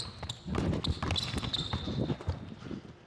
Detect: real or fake real